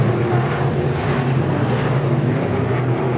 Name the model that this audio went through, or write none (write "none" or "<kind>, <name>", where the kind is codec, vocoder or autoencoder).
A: none